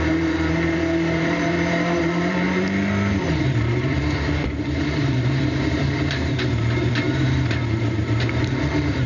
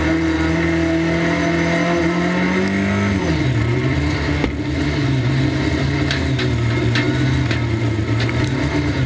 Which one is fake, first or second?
first